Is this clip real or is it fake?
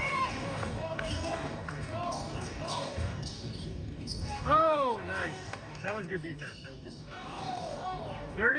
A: fake